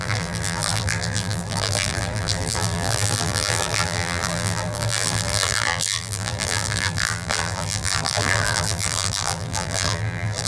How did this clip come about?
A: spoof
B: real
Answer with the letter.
A